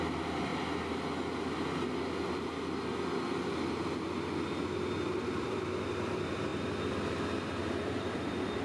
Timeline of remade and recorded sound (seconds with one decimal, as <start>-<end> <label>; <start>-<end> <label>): 0.0-0.5 remade; 0.5-4.6 recorded; 4.6-8.6 remade